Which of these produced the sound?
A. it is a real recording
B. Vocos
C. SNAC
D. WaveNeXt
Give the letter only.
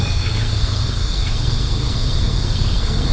C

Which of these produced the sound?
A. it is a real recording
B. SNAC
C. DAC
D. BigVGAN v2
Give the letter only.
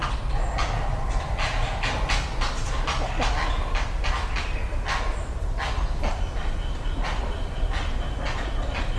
A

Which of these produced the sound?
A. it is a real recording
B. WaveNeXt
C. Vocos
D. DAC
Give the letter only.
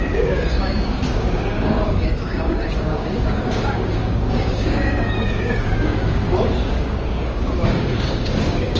D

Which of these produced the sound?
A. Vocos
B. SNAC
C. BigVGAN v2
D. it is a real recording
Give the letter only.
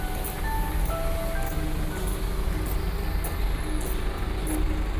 D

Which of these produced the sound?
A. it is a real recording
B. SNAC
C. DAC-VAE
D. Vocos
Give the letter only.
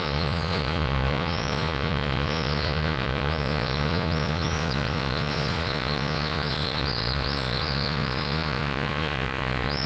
D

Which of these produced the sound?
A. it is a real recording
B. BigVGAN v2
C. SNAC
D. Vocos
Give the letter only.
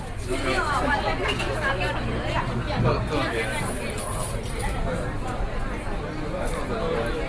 A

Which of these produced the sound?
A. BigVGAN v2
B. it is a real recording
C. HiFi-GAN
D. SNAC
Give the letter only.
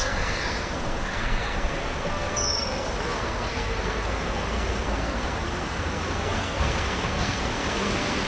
D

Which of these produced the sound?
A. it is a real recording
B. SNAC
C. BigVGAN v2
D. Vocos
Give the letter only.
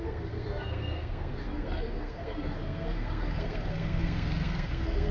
B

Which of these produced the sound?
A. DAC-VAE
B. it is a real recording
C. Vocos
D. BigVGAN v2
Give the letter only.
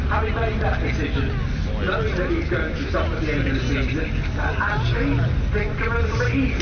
B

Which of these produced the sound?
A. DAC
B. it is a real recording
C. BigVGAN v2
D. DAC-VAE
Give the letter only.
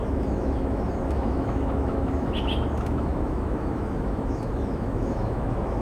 D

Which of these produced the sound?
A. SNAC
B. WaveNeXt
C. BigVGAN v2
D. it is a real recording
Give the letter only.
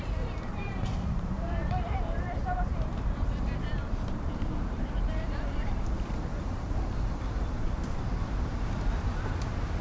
C